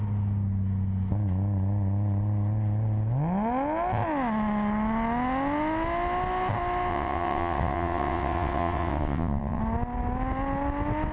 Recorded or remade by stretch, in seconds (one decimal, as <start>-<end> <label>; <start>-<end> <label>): 0.0-6.9 recorded; 6.9-9.6 remade; 9.6-11.1 recorded